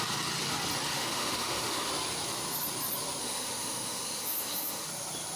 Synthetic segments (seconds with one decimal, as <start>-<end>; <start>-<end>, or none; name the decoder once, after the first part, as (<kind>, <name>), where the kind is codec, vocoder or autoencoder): 0.9-1.9 (autoencoder, DAC-VAE); 3.2-4.9